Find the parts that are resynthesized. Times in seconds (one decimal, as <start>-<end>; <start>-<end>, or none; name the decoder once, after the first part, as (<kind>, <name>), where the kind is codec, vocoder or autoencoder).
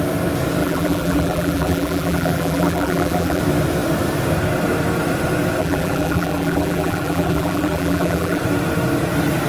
0.6-3.4 (vocoder, BigVGAN v2); 5.6-8.4